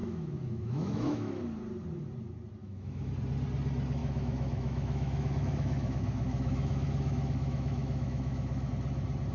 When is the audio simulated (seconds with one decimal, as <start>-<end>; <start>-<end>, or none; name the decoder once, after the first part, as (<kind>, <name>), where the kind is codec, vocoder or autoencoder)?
0.0-1.4 (autoencoder, DAC-VAE); 2.6-3.1; 4.0-8.7